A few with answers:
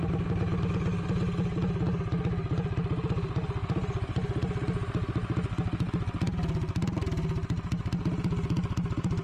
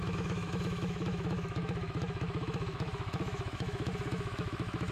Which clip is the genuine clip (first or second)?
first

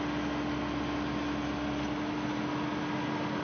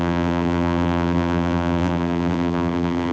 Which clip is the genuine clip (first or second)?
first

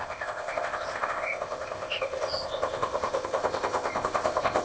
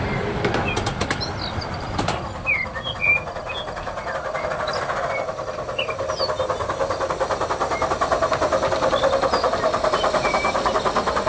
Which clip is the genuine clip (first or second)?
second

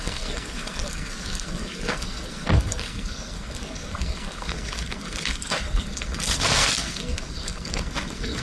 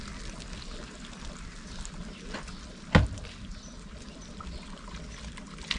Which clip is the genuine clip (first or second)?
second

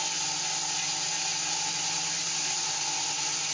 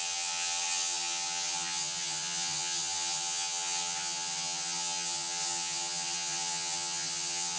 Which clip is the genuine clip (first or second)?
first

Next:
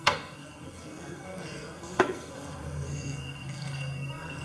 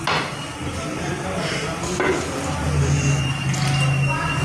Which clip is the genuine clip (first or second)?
second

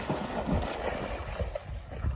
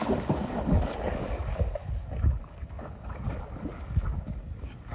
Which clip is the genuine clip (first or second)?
first